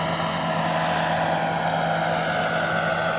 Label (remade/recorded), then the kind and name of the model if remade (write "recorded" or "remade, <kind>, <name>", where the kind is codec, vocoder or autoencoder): recorded